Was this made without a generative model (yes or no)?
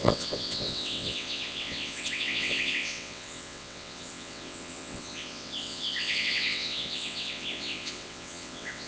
no